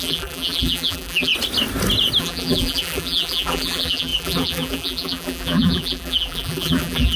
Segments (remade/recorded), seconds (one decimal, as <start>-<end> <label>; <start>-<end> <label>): 0.0-1.3 remade; 1.3-2.2 recorded; 2.2-7.2 remade